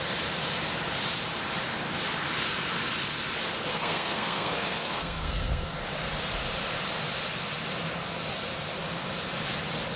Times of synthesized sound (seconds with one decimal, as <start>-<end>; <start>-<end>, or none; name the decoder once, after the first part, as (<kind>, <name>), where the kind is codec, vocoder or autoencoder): 3.7-5.7 (codec, SNAC)